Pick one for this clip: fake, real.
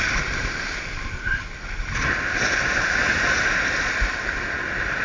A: real